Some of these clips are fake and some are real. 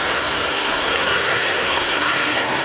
fake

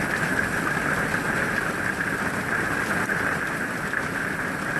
real